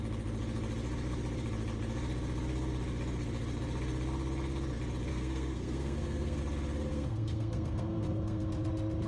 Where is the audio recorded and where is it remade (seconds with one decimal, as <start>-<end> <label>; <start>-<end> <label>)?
0.0-5.1 recorded; 5.1-6.4 remade; 6.4-6.9 recorded; 6.9-8.5 remade; 8.5-9.1 recorded